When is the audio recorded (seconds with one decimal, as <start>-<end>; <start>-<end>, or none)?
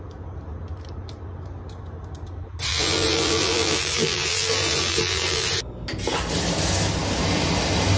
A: 0.0-2.7; 5.5-8.0